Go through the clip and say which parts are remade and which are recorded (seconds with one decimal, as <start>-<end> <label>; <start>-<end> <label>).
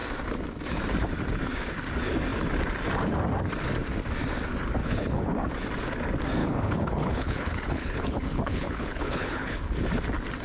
0.0-4.8 recorded; 4.8-5.5 remade; 5.5-6.4 recorded; 6.4-9.6 remade; 9.6-10.4 recorded